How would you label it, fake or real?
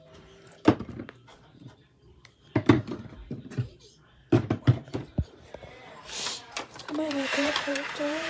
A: fake